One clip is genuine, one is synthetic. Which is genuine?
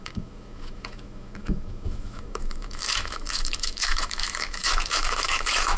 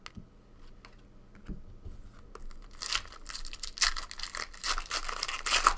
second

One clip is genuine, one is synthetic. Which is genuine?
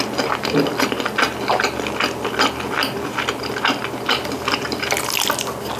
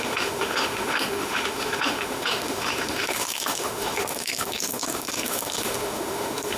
first